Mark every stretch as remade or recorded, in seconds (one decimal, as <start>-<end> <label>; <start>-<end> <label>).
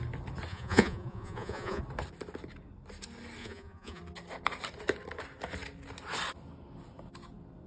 0.0-0.5 recorded; 0.5-1.8 remade; 1.8-3.4 recorded; 3.4-4.0 remade; 4.0-7.7 recorded